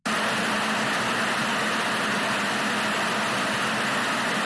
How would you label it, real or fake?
real